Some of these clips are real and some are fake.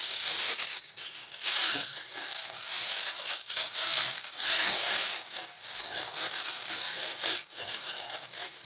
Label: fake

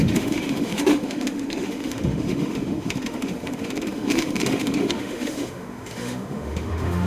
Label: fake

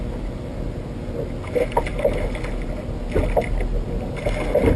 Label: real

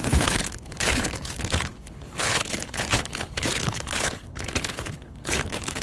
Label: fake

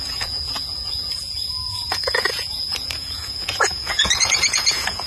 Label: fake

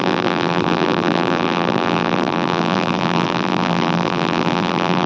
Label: fake